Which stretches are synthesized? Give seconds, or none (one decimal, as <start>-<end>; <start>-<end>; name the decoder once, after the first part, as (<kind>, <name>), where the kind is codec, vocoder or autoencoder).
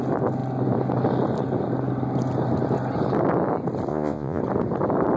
3.9-4.4 (vocoder, Vocos)